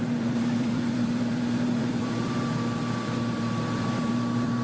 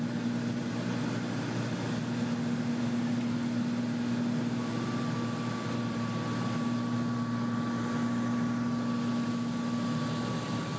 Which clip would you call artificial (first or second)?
first